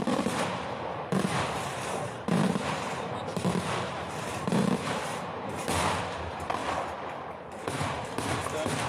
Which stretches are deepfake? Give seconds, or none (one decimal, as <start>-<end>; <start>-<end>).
0.0-3.3; 3.9-6.6; 7.3-8.9